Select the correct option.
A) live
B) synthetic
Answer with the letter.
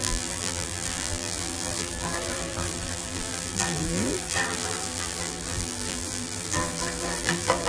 B